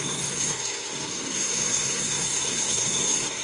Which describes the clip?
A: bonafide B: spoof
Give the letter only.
B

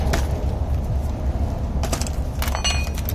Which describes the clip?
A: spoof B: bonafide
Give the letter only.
B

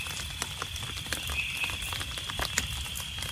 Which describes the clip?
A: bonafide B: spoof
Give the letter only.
A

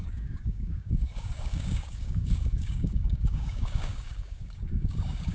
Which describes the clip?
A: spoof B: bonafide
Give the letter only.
A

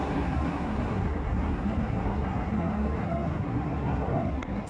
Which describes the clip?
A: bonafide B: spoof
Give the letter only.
B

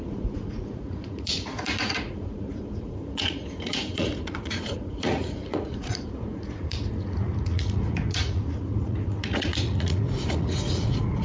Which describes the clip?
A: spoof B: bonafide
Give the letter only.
A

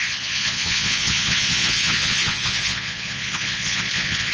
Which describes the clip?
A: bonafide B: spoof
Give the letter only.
B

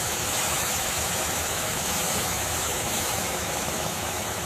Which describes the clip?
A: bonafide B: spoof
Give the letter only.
B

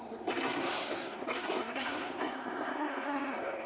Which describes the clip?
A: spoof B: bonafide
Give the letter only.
A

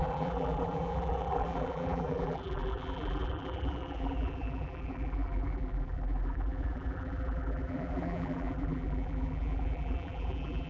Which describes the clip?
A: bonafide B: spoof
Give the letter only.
B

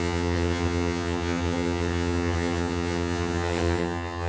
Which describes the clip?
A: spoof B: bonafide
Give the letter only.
A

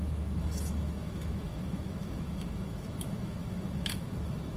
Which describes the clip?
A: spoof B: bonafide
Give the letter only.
A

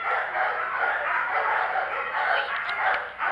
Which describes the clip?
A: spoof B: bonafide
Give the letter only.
B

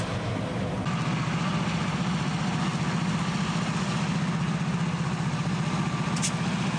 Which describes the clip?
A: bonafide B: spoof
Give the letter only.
A